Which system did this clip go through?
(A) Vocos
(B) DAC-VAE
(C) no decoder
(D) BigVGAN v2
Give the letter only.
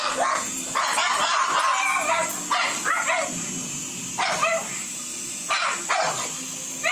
C